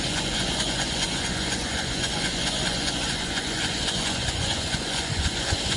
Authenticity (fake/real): fake